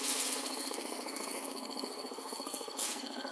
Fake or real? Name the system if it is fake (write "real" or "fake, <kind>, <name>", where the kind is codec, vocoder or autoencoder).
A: fake, codec, SNAC